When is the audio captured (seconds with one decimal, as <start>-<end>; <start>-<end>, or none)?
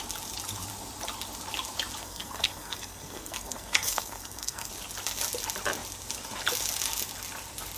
0.0-2.0; 4.7-7.8